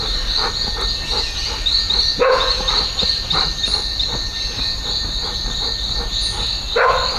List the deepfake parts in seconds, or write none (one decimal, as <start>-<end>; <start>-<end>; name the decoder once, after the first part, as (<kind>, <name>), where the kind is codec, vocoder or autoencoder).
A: 2.1-2.6 (vocoder, Vocos)